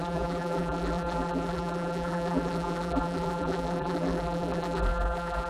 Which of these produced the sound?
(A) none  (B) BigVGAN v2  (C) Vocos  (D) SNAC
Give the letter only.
B